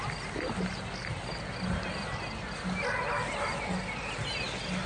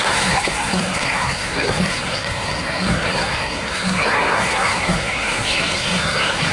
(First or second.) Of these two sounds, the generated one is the second